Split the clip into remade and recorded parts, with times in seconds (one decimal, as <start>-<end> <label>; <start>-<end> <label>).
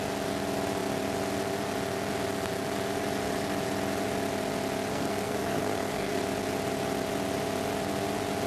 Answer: 0.0-4.9 recorded; 4.9-6.2 remade; 6.2-8.5 recorded